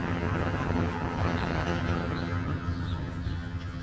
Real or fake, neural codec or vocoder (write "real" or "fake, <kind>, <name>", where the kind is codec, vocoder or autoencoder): fake, vocoder, HiFi-GAN